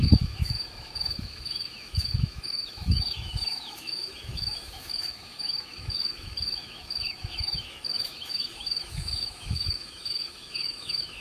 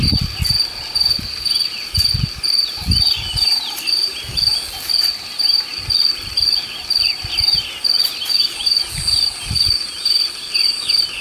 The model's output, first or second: first